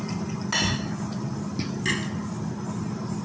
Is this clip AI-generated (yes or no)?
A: no